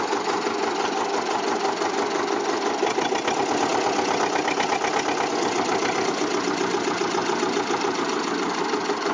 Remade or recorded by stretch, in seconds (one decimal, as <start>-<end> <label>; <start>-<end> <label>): 0.0-9.1 recorded

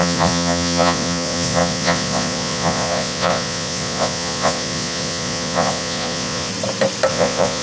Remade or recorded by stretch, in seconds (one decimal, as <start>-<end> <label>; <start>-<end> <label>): 0.0-6.5 remade; 6.5-7.1 recorded; 7.1-7.6 remade

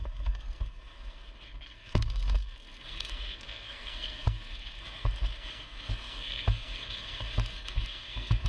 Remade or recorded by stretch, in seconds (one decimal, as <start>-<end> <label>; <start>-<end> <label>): 0.0-8.5 remade

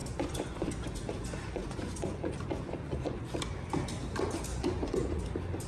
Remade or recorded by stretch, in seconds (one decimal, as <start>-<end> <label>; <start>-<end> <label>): 0.0-3.4 remade; 3.4-4.5 recorded; 4.5-5.2 remade; 5.2-5.7 recorded

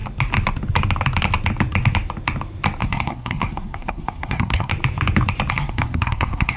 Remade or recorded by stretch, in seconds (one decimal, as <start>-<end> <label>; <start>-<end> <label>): 0.0-2.8 recorded; 2.8-4.7 remade; 4.7-5.5 recorded; 5.5-6.6 remade

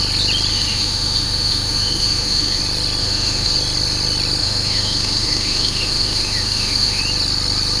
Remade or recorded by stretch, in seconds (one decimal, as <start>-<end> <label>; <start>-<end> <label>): 0.0-0.5 recorded; 0.5-2.6 remade; 2.6-3.0 recorded; 3.0-3.5 remade; 3.5-4.4 recorded; 4.4-7.0 remade; 7.0-7.8 recorded

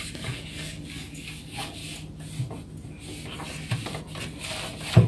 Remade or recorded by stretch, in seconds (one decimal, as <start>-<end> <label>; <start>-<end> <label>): 0.0-1.8 remade; 1.8-5.1 recorded

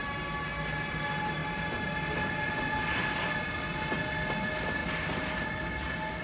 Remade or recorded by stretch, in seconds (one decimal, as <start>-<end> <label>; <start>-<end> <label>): 0.0-6.2 recorded